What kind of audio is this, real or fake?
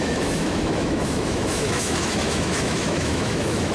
fake